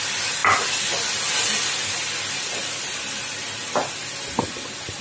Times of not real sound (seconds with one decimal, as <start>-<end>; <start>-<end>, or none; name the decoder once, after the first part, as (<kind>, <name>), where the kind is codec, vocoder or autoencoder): none